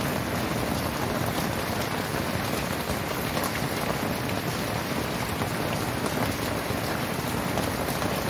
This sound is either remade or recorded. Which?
recorded